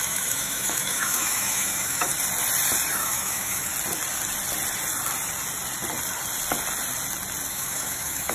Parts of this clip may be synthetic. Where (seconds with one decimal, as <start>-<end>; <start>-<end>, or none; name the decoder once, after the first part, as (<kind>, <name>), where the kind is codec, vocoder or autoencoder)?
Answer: 0.0-2.1 (autoencoder, DAC-VAE); 2.9-3.7; 7.5-8.3